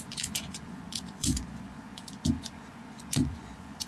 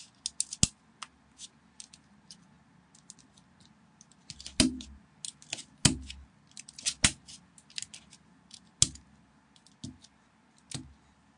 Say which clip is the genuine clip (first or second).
second